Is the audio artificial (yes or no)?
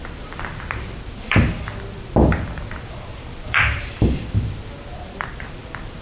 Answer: yes